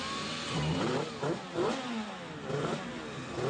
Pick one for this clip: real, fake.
real